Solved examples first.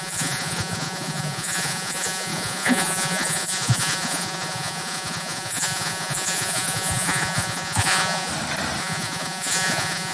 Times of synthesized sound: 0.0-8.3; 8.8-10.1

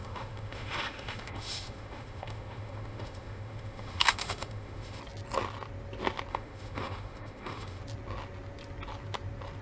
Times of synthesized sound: 0.0-5.0; 6.3-7.8